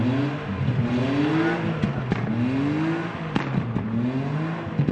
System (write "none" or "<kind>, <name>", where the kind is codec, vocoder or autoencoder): none